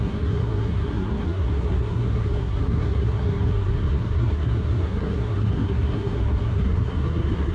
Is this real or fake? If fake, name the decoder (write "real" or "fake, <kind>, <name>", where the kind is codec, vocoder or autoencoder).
fake, codec, SNAC